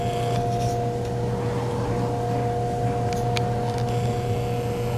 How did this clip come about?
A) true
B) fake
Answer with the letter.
A